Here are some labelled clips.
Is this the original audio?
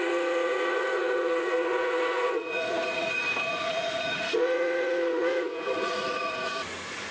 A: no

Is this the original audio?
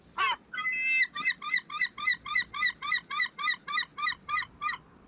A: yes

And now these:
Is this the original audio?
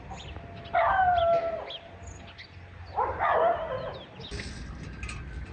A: yes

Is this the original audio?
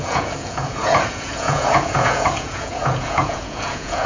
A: no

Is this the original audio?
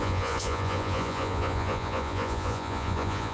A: no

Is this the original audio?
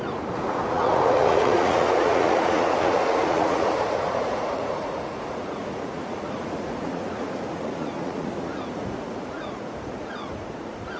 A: no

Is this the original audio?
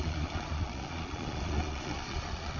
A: no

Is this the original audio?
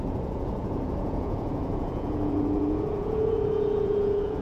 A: no